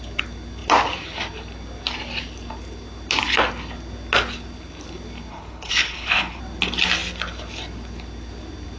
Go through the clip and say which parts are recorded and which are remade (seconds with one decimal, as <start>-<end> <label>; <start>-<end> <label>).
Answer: 0.0-5.3 recorded; 5.3-6.4 remade; 6.4-8.8 recorded